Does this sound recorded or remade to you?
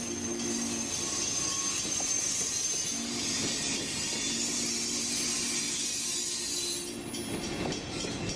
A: recorded